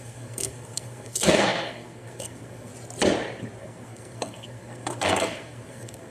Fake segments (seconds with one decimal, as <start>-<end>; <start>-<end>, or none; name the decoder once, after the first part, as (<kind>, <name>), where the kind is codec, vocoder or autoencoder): 0.0-2.7 (codec, SNAC); 3.6-6.1